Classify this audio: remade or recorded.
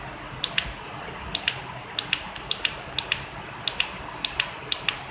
recorded